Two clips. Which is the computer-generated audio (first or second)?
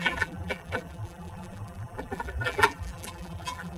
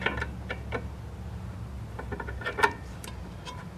first